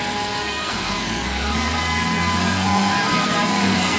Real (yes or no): no